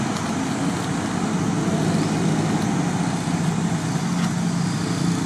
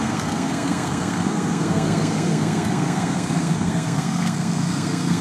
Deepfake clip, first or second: second